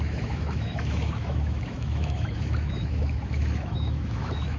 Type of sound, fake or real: fake